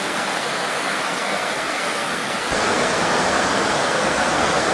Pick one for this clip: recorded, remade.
remade